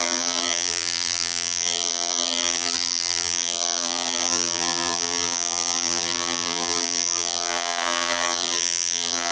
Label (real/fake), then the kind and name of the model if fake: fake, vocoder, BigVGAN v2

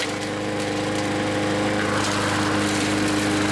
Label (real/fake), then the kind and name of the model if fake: real